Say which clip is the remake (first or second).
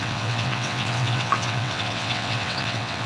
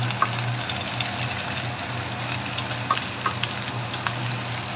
first